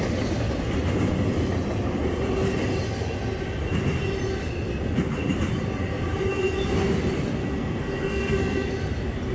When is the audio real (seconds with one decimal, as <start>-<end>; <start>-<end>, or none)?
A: 0.0-7.4; 8.7-9.3